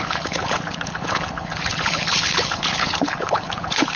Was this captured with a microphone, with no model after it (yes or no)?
no